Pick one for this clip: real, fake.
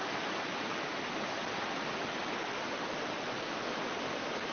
real